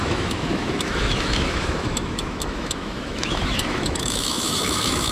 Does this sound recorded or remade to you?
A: remade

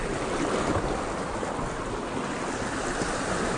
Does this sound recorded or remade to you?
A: recorded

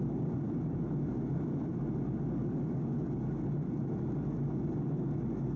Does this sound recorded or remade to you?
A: recorded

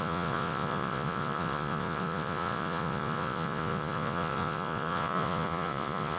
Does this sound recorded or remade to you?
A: remade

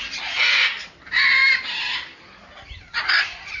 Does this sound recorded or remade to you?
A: recorded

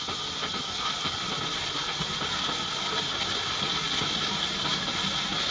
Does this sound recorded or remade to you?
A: recorded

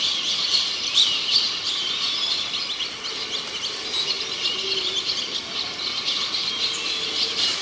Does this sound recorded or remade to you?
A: recorded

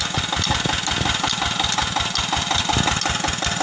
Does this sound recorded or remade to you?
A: recorded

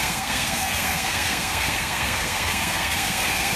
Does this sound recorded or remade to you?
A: remade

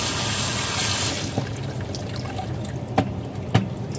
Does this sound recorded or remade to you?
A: recorded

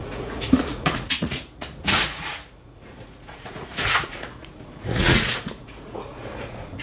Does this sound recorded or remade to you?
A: remade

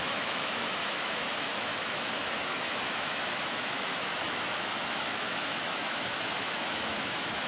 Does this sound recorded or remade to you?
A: remade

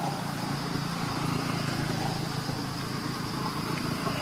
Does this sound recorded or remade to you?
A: recorded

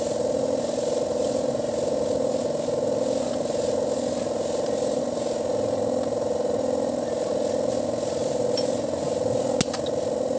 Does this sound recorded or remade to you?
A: recorded